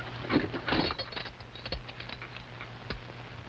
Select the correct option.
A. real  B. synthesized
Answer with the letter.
A